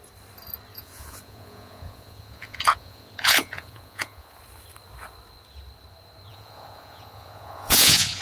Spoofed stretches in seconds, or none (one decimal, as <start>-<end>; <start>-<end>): 0.7-4.4; 6.3-8.2